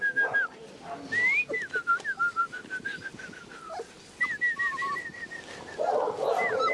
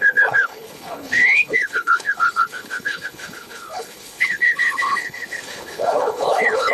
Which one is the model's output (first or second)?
second